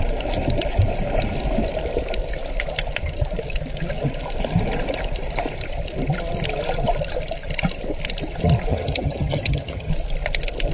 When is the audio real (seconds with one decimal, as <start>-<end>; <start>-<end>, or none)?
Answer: 0.0-8.7; 9.9-10.7